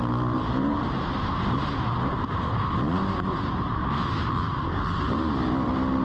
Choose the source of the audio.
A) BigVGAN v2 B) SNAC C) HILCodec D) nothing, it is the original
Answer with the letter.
A